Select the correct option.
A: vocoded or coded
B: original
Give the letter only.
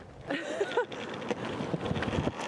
B